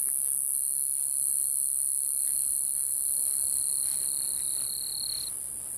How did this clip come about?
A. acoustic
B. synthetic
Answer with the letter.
A